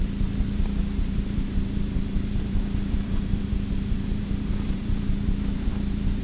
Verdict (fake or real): fake